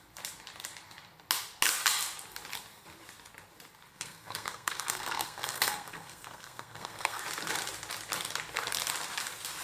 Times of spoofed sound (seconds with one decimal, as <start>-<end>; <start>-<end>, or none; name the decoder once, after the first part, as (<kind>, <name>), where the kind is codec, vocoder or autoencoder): 3.9-7.2 (codec, SNAC)